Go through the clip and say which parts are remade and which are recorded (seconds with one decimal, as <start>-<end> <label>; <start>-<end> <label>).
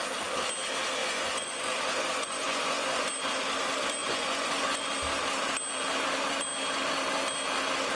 0.0-1.0 recorded; 1.0-3.1 remade; 3.1-4.0 recorded; 4.0-4.9 remade; 4.9-8.0 recorded